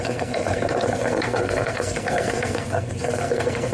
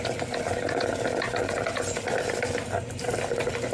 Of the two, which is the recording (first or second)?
second